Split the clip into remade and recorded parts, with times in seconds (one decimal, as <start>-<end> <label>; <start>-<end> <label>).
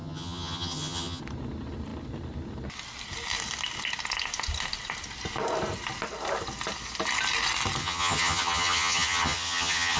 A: 0.0-1.2 remade; 1.2-7.8 recorded; 7.8-10.0 remade